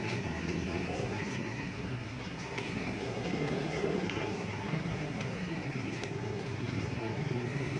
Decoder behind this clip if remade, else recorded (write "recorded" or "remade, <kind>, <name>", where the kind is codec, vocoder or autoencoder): remade, codec, SNAC